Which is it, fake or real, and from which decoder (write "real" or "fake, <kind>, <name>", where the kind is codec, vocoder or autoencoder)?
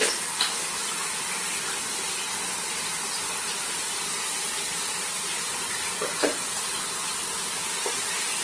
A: real